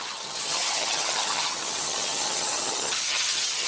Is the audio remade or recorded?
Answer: remade